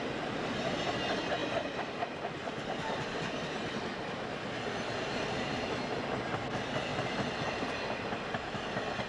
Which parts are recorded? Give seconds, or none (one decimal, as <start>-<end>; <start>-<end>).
0.0-1.4; 3.7-6.9; 8.5-9.1